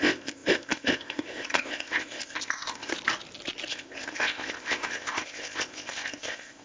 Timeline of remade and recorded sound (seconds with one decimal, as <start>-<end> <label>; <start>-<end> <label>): 0.0-2.9 remade; 2.9-3.7 recorded; 3.7-6.6 remade